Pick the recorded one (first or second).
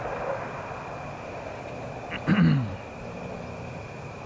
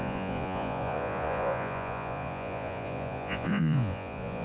first